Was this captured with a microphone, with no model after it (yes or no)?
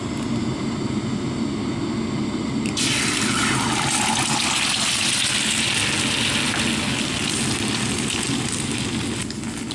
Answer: yes